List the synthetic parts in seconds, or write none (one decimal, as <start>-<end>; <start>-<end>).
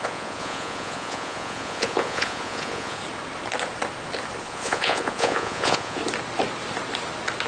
0.0-3.0; 4.4-6.0